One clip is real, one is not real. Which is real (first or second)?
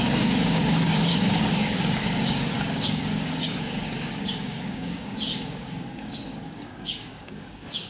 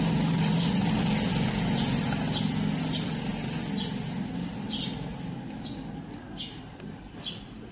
second